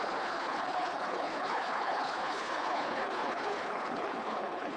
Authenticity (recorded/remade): remade